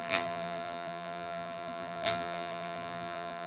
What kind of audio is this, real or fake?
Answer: fake